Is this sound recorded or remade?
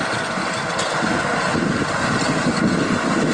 recorded